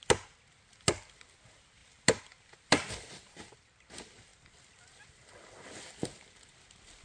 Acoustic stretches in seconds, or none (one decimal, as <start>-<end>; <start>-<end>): 0.0-7.0